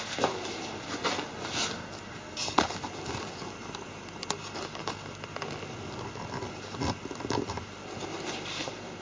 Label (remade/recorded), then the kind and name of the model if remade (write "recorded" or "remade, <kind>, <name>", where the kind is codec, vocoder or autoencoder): recorded